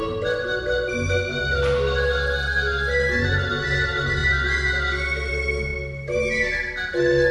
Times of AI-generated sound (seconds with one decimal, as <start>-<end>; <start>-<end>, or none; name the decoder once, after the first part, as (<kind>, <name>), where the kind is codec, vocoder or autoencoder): none